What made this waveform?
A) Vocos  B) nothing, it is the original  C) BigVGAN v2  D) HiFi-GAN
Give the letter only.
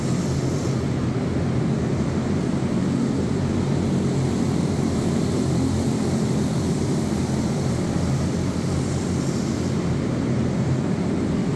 C